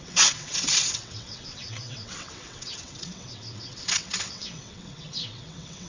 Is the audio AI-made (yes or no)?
yes